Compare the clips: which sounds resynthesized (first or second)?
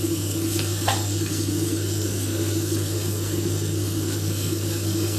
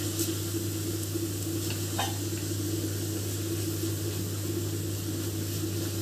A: first